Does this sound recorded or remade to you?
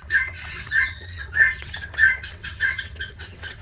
remade